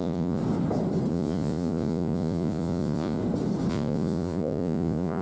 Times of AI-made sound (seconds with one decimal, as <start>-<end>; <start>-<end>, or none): 0.0-0.4; 1.1-3.2; 3.7-5.2